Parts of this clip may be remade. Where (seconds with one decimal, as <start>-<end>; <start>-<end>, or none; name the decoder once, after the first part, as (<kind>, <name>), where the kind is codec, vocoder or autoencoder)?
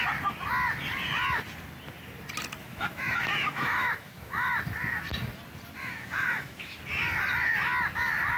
2.6-4.5 (autoencoder, DAC-VAE); 5.8-6.8